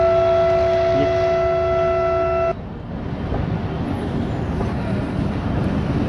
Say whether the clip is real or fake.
real